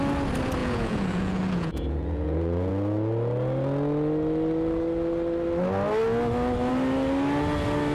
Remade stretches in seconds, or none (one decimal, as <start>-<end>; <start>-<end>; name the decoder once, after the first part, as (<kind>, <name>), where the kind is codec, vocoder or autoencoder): 0.6-2.7 (vocoder, Vocos)